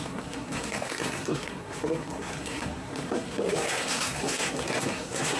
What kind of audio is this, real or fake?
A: fake